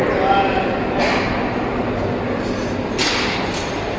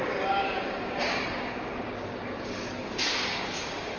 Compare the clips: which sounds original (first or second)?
first